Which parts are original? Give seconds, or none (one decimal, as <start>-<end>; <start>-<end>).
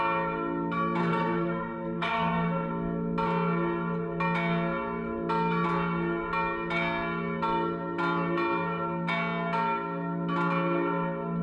0.0-1.0; 2.7-11.4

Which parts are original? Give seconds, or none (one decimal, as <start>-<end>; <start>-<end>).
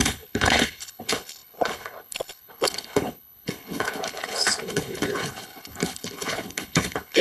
none